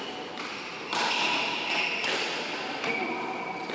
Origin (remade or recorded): recorded